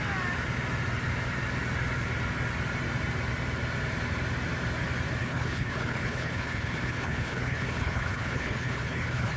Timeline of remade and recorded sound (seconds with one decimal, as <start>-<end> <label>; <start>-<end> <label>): 0.0-5.2 recorded; 5.2-9.4 remade